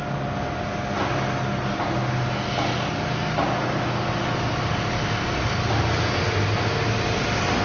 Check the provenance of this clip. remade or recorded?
recorded